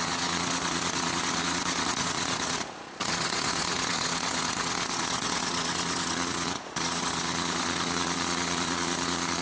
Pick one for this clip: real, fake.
fake